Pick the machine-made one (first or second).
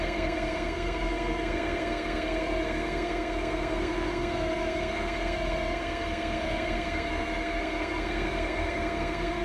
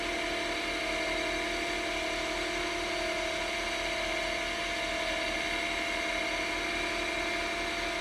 first